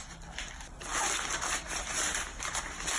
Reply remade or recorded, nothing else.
recorded